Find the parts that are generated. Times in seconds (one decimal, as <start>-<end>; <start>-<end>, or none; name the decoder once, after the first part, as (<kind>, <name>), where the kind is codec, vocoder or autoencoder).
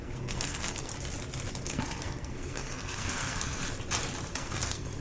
0.0-0.9 (codec, SNAC); 1.5-3.6; 4.3-5.0